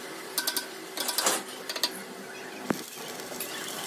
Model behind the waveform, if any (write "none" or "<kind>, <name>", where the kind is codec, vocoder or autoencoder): none